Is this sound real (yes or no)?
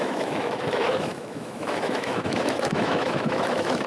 no